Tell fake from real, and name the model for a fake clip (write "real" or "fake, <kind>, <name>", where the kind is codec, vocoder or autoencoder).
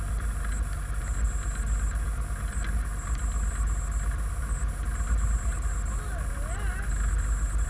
real